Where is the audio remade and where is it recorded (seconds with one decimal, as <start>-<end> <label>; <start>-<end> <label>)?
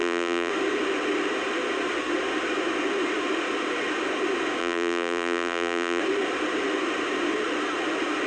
0.0-0.5 remade; 0.5-4.6 recorded; 4.6-6.0 remade; 6.0-8.3 recorded